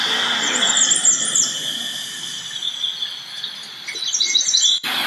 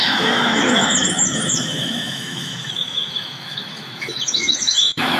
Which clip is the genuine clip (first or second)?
first